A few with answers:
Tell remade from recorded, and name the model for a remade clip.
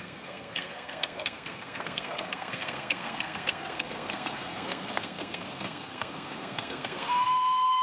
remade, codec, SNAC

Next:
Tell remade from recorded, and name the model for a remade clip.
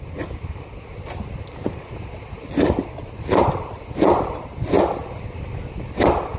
recorded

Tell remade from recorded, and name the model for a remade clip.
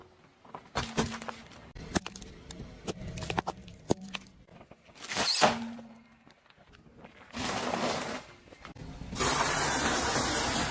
recorded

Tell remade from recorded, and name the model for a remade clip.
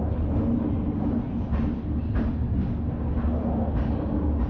recorded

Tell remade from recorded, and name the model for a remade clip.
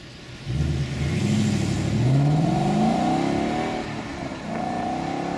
recorded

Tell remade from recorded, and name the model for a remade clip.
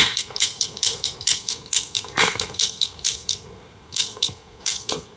remade, codec, SNAC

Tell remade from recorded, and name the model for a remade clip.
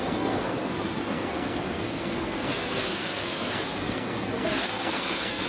remade, codec, SNAC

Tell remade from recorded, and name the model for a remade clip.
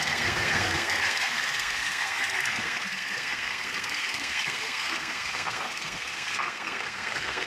remade, codec, SNAC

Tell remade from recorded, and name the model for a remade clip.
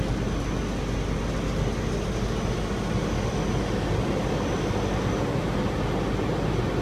recorded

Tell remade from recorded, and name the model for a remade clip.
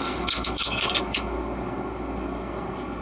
remade, codec, SNAC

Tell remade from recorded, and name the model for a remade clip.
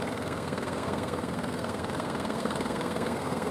remade, codec, SNAC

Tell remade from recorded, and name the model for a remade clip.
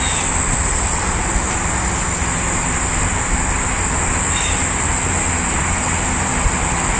recorded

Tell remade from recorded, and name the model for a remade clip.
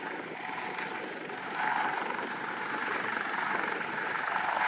recorded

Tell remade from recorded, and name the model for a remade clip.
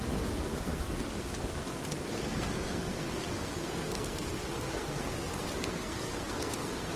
remade, codec, SNAC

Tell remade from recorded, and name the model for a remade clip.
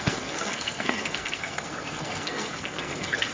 remade, codec, SNAC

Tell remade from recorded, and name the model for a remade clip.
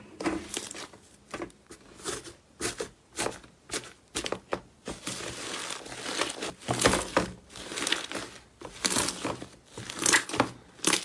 recorded